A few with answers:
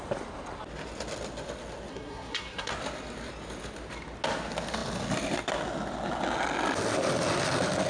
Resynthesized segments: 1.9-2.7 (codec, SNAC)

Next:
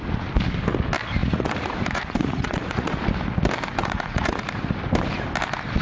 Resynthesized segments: 1.2-2.9 (vocoder, Vocos); 3.8-4.5

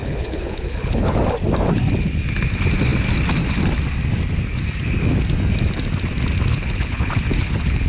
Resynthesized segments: 0.0-1.2 (codec, HILCodec); 6.5-7.9

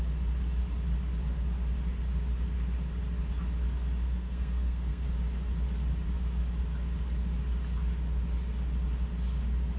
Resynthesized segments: 4.0-5.1 (codec, SNAC)

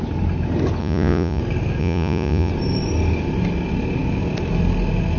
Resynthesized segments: 0.8-1.4 (vocoder, Vocos); 1.8-2.5

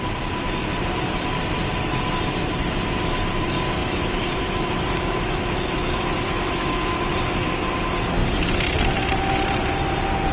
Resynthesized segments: 3.8-7.1 (autoencoder, DAC-VAE)